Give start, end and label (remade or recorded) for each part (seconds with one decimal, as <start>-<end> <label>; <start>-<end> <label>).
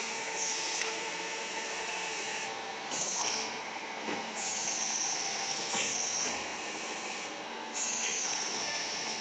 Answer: 0.0-9.2 remade